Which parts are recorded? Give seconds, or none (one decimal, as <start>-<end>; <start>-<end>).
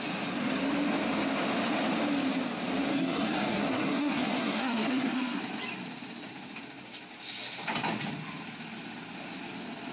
0.0-2.9; 5.4-9.9